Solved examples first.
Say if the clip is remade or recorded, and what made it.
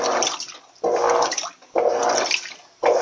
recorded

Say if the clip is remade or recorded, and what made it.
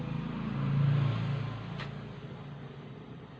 recorded